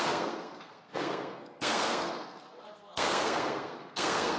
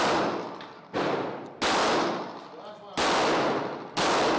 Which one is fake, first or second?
first